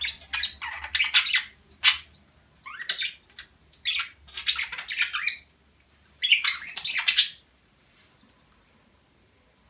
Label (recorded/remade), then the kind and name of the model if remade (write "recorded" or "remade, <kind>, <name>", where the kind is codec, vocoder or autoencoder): recorded